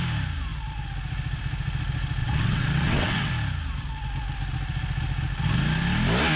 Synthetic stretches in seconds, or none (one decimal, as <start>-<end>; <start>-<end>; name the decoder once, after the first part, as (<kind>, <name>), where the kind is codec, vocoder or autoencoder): 2.2-3.3 (vocoder, WaveNeXt)